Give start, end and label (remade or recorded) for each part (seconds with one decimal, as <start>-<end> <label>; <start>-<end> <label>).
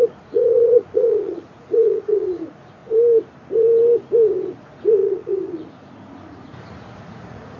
0.0-2.8 remade; 2.8-4.5 recorded; 4.5-7.6 remade